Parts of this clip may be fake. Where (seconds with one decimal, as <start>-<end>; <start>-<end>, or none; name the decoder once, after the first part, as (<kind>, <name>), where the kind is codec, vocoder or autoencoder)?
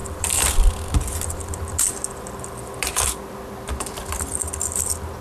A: 0.0-3.1 (vocoder, BigVGAN v2)